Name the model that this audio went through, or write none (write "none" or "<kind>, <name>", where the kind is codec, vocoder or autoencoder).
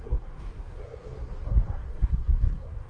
codec, SNAC